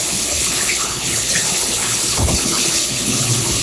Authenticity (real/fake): fake